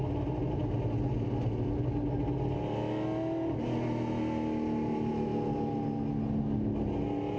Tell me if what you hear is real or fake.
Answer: real